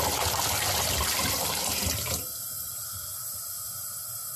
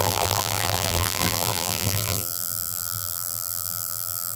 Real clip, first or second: first